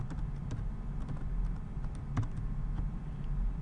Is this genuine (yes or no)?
yes